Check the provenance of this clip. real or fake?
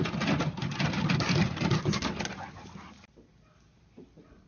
real